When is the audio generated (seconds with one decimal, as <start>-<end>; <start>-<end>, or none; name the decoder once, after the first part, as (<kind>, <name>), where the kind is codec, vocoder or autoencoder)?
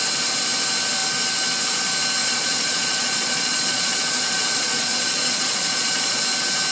2.2-6.2 (vocoder, Vocos)